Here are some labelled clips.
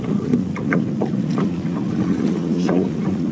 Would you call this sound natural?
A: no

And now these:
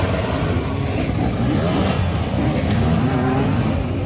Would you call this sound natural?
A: yes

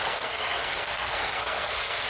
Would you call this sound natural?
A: no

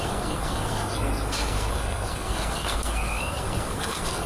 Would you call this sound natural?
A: no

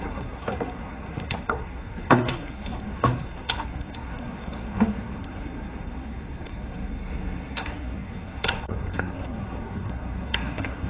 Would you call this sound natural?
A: no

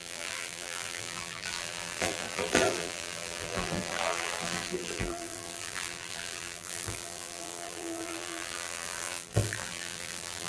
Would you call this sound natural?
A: no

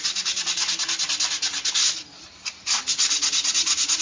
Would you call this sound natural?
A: yes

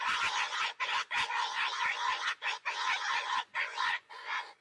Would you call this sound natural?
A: no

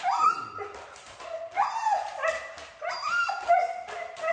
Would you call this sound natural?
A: yes